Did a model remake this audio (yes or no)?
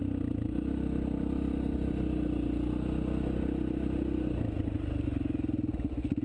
no